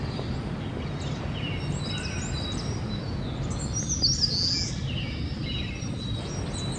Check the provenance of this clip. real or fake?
real